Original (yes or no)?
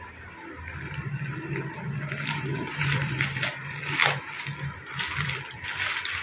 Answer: no